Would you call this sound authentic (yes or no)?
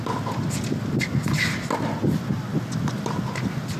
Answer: yes